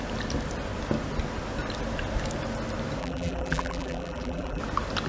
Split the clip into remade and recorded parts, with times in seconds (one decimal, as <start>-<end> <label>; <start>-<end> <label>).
0.0-3.0 recorded; 3.0-4.6 remade; 4.6-5.1 recorded

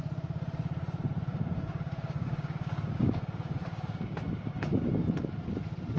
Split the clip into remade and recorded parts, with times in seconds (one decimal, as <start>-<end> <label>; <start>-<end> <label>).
0.0-1.3 recorded; 1.3-4.9 remade; 4.9-6.0 recorded

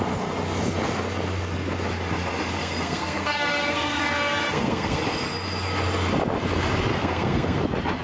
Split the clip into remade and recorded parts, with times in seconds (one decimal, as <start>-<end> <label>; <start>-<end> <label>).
0.0-2.6 recorded; 2.6-5.0 remade; 5.0-6.9 recorded; 6.9-7.6 remade; 7.6-8.0 recorded

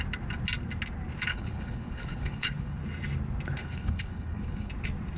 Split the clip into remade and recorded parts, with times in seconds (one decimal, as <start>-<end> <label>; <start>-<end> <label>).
0.0-1.3 recorded; 1.3-2.8 remade; 2.8-3.6 recorded; 3.6-4.7 remade; 4.7-5.2 recorded

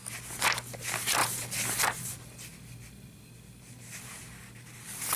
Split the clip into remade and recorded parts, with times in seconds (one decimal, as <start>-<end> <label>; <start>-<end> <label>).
0.0-5.2 recorded